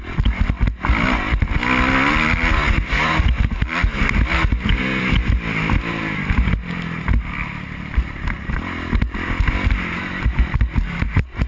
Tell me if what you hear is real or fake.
real